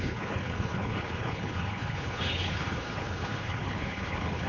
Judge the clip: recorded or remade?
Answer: remade